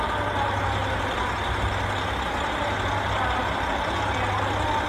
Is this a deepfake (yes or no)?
no